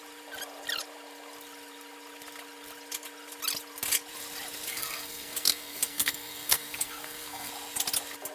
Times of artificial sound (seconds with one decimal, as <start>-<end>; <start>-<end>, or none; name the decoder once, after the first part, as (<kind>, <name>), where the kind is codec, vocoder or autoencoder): 4.7-7.5 (codec, SNAC)

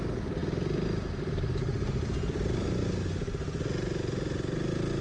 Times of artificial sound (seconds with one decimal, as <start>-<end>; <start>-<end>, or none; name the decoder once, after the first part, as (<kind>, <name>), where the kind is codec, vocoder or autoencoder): none

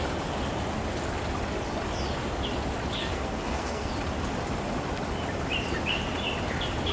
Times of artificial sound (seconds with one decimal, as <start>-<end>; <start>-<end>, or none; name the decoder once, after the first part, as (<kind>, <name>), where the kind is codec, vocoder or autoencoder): 3.0-3.9 (codec, SNAC)

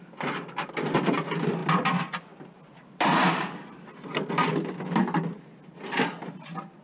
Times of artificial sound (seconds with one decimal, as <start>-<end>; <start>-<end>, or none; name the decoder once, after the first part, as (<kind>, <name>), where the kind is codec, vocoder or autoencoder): none

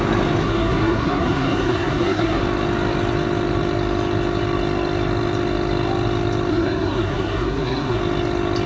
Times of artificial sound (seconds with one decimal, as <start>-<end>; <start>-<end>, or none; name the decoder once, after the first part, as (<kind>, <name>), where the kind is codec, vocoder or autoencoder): 0.4-2.4 (codec, SNAC); 6.5-8.0

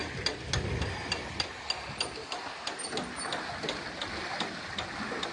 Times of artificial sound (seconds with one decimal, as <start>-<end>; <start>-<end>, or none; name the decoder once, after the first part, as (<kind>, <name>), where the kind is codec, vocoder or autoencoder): none

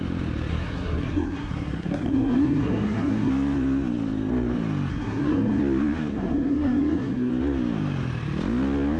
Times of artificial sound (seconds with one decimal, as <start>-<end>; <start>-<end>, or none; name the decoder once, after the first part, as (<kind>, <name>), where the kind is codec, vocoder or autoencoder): 0.5-3.3 (codec, SNAC); 4.9-5.6; 6.1-7.3

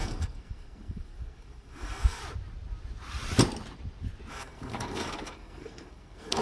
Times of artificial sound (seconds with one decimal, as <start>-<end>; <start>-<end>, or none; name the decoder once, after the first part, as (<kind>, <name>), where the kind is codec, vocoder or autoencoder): 0.0-2.2 (codec, SNAC); 4.3-6.4